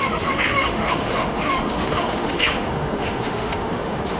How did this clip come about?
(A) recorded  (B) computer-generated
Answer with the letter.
B